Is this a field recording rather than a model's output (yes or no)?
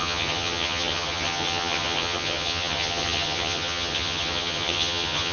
no